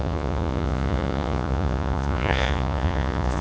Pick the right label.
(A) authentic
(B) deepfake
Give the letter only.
B